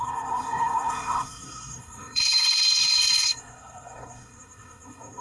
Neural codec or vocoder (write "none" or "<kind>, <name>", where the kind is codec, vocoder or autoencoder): codec, SNAC